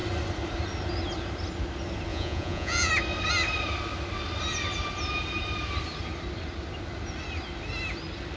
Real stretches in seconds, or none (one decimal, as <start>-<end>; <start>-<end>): 0.0-2.1; 2.9-8.4